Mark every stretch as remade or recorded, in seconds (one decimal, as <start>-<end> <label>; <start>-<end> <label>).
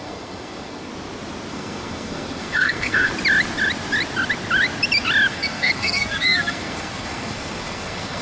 0.0-0.9 remade; 0.9-1.5 recorded; 1.5-3.1 remade; 3.1-5.3 recorded; 5.3-8.2 remade